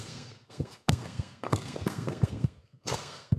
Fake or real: fake